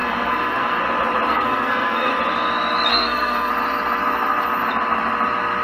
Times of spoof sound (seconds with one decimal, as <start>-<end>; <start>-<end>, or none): 0.0-0.8; 1.3-2.1; 2.9-3.5